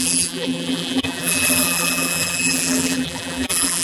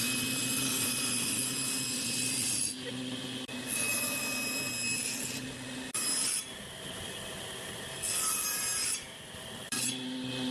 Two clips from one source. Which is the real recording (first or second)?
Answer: second